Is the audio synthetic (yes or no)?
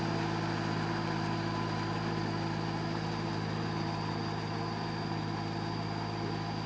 no